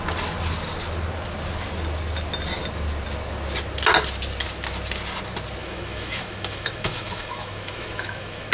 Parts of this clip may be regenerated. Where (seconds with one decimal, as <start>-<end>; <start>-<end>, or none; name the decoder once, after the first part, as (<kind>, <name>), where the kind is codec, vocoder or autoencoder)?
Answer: 5.6-8.5 (autoencoder, DAC-VAE)